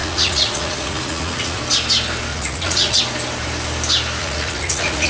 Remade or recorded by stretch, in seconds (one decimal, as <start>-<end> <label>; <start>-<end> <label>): 0.0-1.6 remade; 1.6-2.3 recorded; 2.3-3.0 remade; 3.0-4.2 recorded; 4.2-5.1 remade